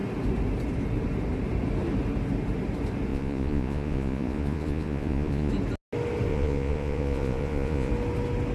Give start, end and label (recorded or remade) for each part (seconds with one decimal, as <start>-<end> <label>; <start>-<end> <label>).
0.0-3.1 recorded; 3.1-5.5 remade; 5.5-6.3 recorded; 6.3-7.9 remade; 7.9-8.5 recorded